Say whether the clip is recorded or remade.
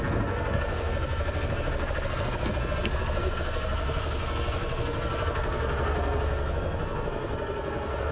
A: remade